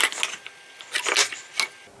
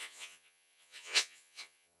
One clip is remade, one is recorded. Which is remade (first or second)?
second